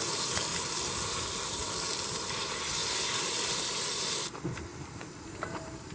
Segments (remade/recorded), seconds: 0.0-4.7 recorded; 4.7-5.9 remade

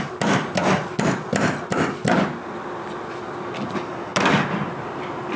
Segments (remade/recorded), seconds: 0.0-0.6 recorded; 0.6-2.9 remade; 2.9-5.4 recorded